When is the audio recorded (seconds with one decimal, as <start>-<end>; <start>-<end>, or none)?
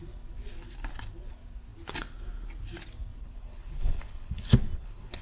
0.0-3.2